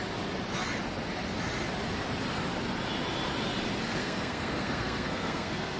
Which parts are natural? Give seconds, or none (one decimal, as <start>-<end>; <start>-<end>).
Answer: 0.0-4.0